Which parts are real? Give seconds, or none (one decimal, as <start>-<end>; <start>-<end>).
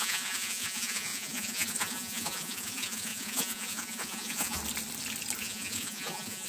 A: 4.6-5.4